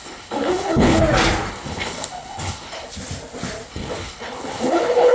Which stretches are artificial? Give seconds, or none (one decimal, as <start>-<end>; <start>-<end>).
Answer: 0.0-1.0; 1.5-2.9; 3.7-5.1